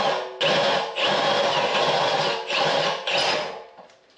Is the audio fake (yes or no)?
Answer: no